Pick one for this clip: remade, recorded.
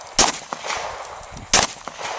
recorded